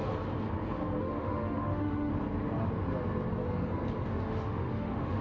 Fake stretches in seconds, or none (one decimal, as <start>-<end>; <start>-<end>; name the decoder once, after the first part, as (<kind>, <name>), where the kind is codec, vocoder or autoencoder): 1.0-2.1 (autoencoder, DAC-VAE); 4.1-5.2